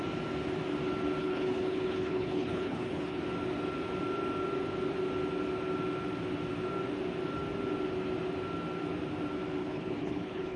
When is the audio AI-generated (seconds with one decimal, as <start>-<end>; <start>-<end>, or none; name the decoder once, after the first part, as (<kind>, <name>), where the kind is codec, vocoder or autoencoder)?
1.2-3.2 (codec, HILCodec); 9.6-10.6